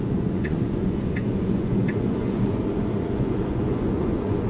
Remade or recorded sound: remade